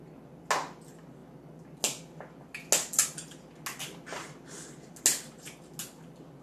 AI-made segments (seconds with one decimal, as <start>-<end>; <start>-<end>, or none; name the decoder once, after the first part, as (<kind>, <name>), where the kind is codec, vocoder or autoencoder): none